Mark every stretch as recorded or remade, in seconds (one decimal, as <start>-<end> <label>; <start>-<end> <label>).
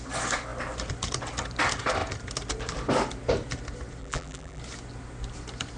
0.0-4.0 recorded; 4.0-4.6 remade; 4.6-5.8 recorded